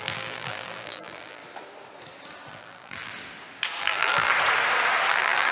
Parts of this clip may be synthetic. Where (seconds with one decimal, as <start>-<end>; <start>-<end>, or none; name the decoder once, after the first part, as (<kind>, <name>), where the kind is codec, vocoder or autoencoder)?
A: 0.0-1.4 (vocoder, BigVGAN v2); 2.5-3.1; 3.8-4.3; 5.1-5.5